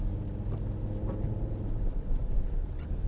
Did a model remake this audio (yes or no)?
no